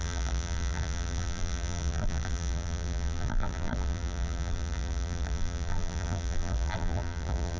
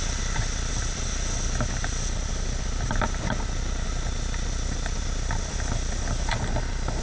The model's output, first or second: first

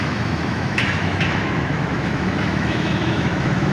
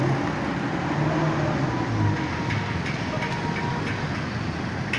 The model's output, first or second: first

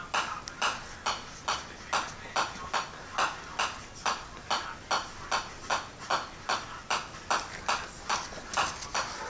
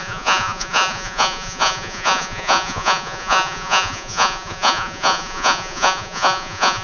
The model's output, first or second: second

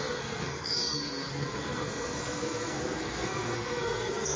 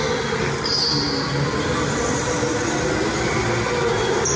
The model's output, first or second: first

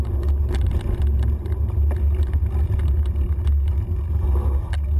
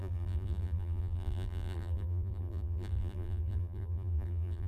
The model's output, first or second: second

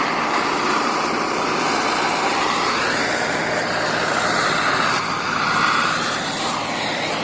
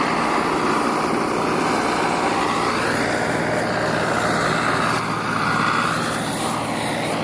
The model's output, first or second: first